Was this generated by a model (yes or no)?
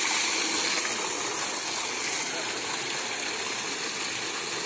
no